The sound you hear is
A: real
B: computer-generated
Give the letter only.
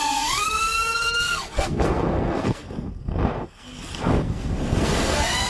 B